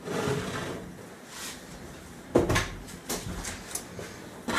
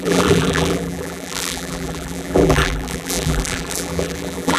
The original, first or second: first